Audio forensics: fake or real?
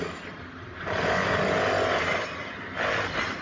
real